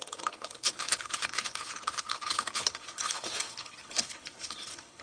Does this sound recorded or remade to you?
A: remade